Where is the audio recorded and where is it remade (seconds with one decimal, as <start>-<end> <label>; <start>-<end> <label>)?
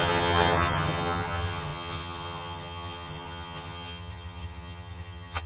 0.0-5.5 remade